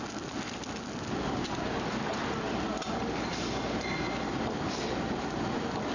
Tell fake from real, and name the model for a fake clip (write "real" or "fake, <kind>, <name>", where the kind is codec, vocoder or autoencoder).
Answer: real